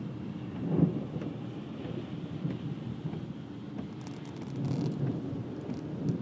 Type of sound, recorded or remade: recorded